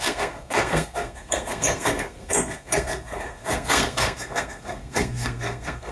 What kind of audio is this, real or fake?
fake